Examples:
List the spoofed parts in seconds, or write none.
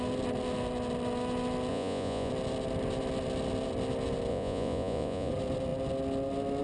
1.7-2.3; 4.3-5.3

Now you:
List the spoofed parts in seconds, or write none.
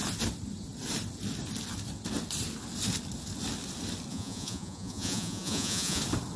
4.1-6.0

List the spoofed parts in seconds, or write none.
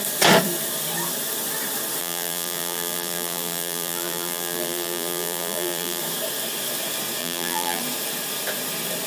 2.0-6.0; 7.2-7.8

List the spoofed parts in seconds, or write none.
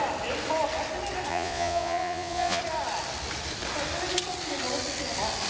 1.3-2.6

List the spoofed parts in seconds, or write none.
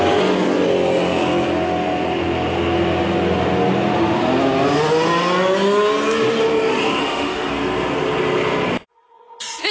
7.0-7.5